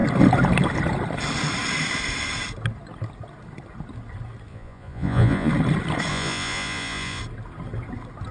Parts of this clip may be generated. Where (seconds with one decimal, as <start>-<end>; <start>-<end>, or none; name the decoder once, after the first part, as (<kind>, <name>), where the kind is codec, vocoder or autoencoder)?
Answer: 4.5-5.5 (vocoder, Vocos); 6.1-7.2